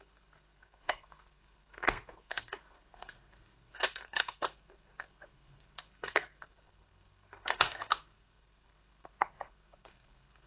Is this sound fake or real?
fake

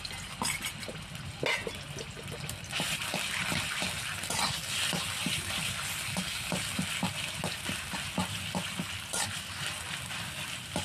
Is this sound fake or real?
real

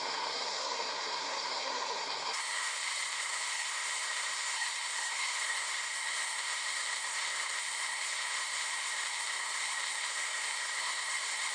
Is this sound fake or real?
fake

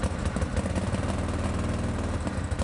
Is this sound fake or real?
real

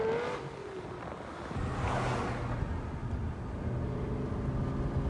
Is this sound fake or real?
real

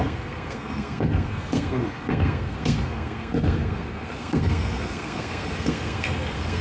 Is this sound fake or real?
fake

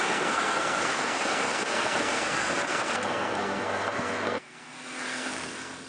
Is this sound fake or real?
fake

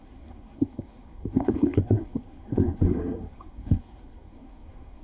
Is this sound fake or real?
fake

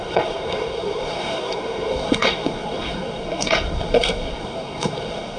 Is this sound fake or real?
fake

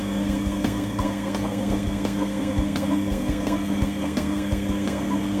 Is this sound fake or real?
fake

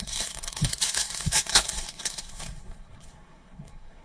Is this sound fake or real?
fake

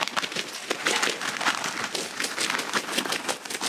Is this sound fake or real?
real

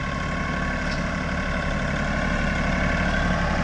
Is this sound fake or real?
real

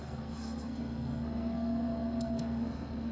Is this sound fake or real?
fake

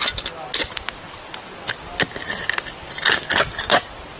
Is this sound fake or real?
real